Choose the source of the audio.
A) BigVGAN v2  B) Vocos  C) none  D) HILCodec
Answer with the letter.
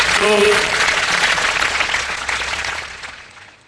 B